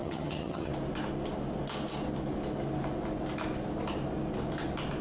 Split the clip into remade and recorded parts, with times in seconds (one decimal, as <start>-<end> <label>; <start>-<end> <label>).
0.0-0.7 remade; 0.7-5.0 recorded